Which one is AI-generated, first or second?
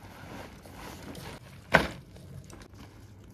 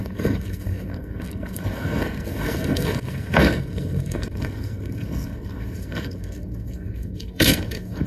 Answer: second